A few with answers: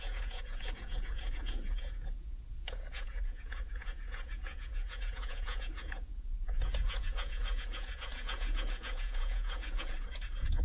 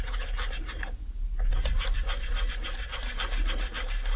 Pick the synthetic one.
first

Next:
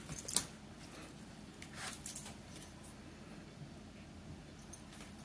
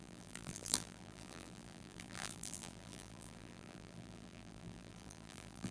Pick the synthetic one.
second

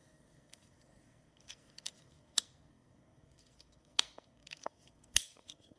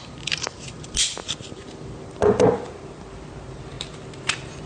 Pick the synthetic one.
first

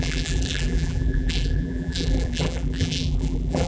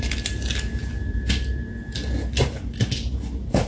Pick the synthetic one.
first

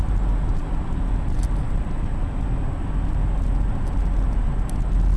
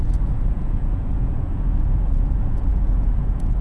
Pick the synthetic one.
second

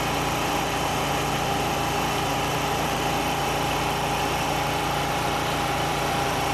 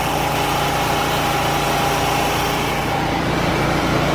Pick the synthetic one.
first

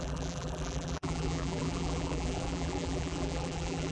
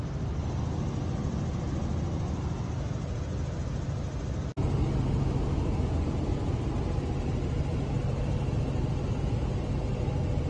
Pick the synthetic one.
first